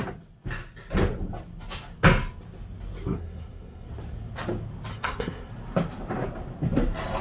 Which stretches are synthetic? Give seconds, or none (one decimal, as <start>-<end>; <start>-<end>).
3.1-3.9; 4.9-5.5